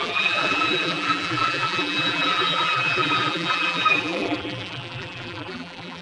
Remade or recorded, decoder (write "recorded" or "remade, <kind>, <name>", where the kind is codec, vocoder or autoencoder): remade, vocoder, BigVGAN v2